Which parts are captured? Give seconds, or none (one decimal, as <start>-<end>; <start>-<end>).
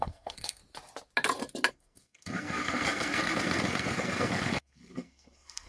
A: 0.6-1.7